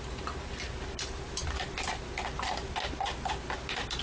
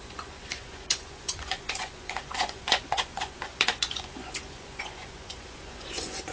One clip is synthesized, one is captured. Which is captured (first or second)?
first